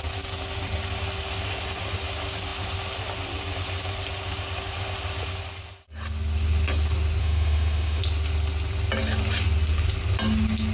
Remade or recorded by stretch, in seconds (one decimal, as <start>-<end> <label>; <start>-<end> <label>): 0.0-7.2 recorded; 7.2-8.0 remade; 8.0-10.7 recorded